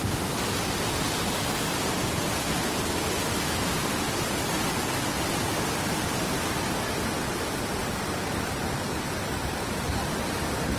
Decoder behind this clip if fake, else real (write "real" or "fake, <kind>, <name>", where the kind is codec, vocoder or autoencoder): real